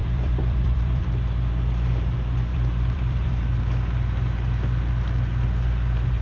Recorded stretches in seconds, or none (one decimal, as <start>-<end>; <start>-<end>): 1.0-2.5; 3.3-6.2